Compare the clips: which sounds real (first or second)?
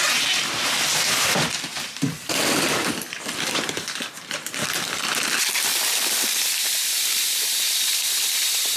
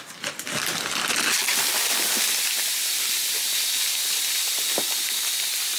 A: second